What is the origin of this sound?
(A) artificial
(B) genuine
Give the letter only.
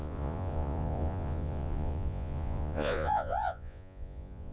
A